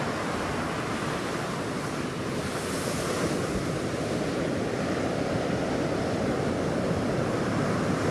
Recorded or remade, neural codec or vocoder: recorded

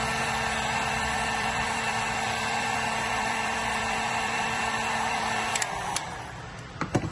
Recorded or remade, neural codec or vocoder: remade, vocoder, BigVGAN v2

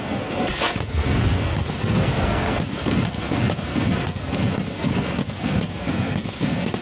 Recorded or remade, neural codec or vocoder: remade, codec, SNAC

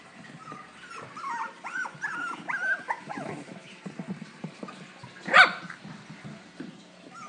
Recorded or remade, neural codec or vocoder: recorded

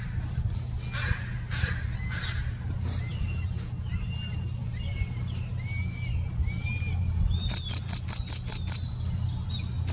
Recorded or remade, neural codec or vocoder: recorded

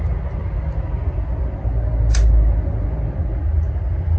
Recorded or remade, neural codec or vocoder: recorded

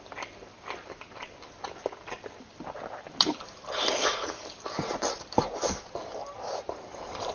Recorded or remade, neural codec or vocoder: recorded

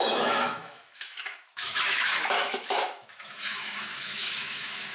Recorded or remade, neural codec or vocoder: remade, autoencoder, DAC-VAE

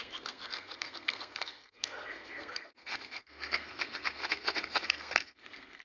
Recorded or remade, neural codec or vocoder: remade, codec, SNAC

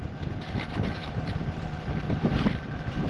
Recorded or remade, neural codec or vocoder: remade, vocoder, BigVGAN v2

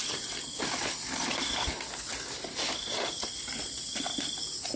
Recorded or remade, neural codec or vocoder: recorded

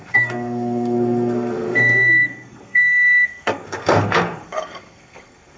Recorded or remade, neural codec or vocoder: remade, codec, SNAC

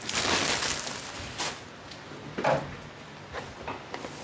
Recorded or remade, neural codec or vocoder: recorded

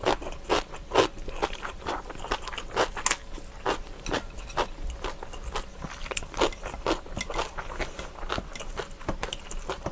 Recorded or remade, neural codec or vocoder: recorded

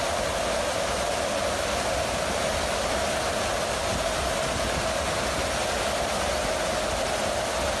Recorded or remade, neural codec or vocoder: recorded